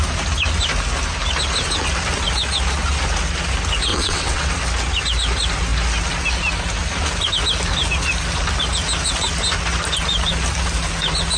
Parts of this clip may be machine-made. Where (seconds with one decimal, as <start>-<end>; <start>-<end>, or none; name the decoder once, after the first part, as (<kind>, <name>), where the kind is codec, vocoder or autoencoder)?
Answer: 3.9-4.5 (vocoder, WaveNeXt)

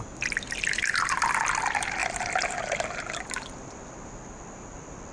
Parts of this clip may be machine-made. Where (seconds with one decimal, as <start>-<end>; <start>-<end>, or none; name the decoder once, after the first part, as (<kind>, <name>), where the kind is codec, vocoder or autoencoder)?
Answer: none

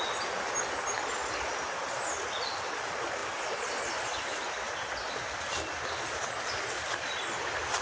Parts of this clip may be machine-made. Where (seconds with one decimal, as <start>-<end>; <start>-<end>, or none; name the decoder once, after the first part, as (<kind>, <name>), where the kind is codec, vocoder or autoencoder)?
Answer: none

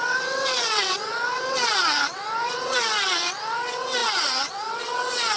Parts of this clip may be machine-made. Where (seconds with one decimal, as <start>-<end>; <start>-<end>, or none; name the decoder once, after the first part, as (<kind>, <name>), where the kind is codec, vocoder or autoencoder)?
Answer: 0.0-5.4 (vocoder, WaveNeXt)

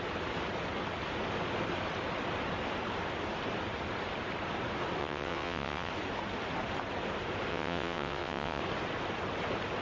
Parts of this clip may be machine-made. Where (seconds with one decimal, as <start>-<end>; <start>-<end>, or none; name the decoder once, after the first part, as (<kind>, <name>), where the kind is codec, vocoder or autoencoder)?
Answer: 5.0-5.9 (vocoder, WaveNeXt); 7.5-8.6

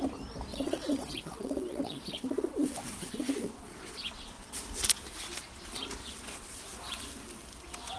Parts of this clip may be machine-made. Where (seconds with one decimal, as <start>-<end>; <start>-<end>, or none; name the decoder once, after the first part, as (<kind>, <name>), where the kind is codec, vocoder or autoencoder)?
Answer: 0.5-4.5 (vocoder, WaveNeXt); 6.0-6.6

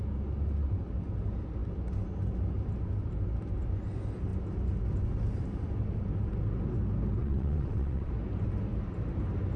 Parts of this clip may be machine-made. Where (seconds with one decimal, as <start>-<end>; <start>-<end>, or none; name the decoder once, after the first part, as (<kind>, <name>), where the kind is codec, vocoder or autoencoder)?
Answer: 7.2-8.1 (vocoder, WaveNeXt)

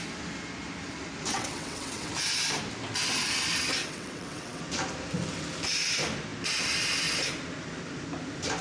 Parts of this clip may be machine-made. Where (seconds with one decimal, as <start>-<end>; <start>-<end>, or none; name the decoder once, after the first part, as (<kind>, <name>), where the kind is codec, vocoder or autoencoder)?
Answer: 1.3-2.1 (vocoder, WaveNeXt); 3.8-4.6